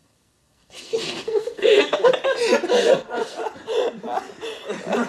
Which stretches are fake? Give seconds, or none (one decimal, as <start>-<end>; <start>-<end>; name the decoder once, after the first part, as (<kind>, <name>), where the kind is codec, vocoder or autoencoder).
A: 0.0-2.1 (codec, SNAC); 2.8-3.4